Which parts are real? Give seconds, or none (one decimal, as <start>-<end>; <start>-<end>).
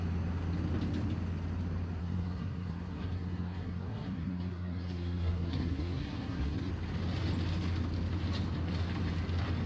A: 0.0-2.0; 6.7-9.7